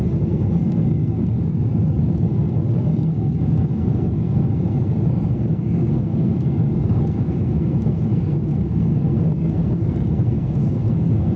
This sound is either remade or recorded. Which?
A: remade